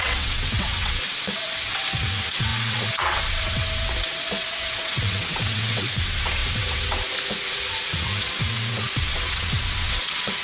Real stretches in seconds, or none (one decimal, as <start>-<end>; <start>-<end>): none